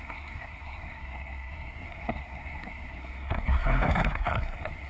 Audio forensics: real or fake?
fake